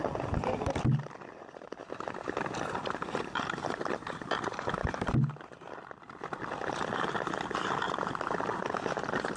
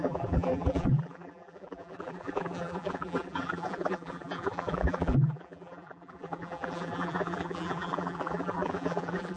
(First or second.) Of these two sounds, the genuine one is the first